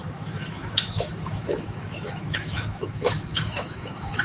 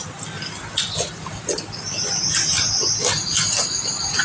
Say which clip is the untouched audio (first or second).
second